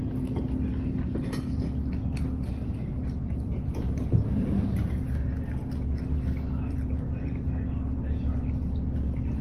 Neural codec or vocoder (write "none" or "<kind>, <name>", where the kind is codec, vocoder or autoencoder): none